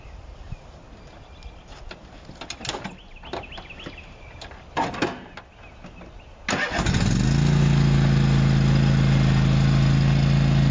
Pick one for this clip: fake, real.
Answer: real